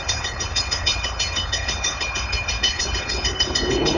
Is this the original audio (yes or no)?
no